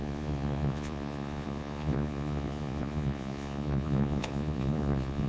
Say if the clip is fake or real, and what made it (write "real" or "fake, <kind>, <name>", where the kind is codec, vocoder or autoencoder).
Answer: fake, vocoder, Vocos